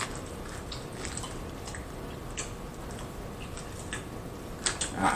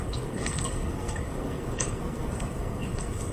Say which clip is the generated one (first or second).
second